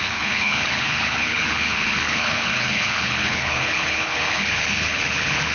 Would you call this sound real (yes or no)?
no